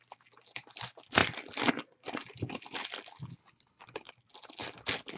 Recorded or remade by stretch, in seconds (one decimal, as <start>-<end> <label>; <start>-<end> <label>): 0.0-3.4 recorded; 3.4-4.1 remade; 4.1-5.2 recorded